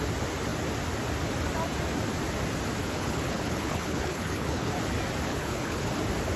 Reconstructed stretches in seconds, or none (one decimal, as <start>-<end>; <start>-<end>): 2.8-4.7; 5.3-5.9